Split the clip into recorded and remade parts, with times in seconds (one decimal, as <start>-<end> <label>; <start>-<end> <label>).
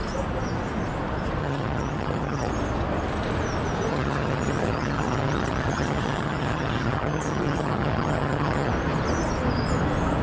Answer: 0.0-1.4 recorded; 1.4-2.5 remade; 2.5-3.9 recorded; 3.9-8.7 remade; 8.7-10.2 recorded